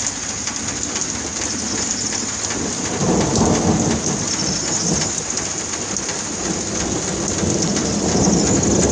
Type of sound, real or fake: real